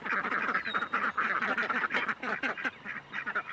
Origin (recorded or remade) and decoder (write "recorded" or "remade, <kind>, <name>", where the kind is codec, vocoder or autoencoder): recorded